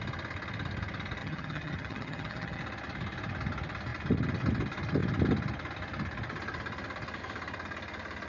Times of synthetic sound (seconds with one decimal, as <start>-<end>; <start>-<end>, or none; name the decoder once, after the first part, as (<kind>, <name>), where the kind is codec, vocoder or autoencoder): 1.2-2.6 (vocoder, HiFi-GAN)